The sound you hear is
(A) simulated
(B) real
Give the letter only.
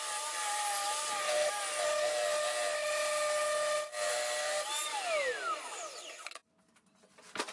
B